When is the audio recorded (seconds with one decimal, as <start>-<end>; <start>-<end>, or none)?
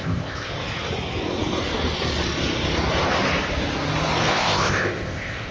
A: 0.5-4.3